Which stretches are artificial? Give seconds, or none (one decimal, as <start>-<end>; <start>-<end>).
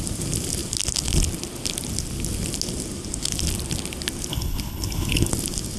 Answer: 4.3-5.3